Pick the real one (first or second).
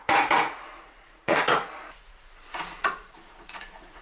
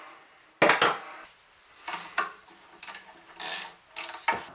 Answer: second